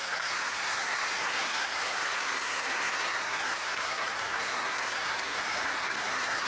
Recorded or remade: remade